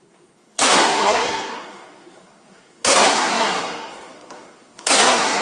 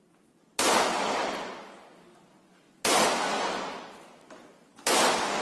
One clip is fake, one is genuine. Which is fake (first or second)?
first